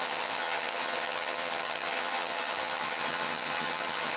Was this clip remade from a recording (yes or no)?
yes